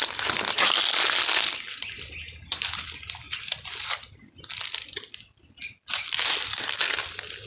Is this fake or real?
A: real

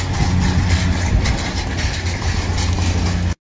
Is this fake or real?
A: real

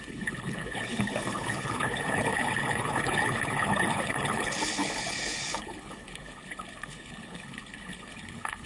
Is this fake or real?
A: fake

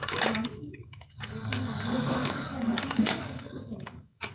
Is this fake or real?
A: fake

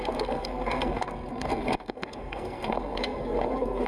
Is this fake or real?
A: fake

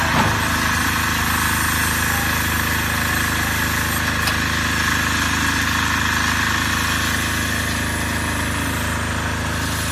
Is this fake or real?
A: real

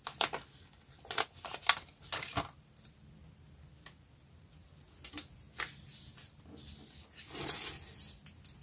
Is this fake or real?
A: real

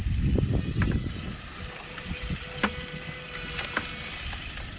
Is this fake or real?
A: real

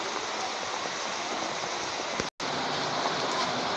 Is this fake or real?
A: real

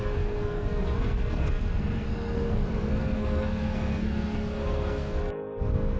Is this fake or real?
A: fake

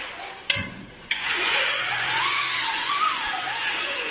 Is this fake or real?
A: fake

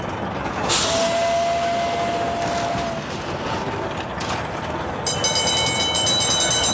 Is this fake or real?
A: real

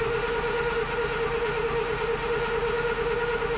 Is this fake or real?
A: real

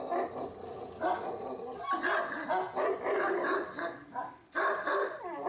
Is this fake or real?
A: real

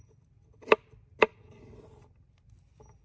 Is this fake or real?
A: real